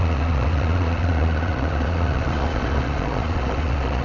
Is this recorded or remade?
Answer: remade